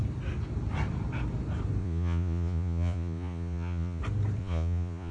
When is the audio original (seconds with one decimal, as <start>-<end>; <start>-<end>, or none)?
0.0-1.8; 4.0-4.4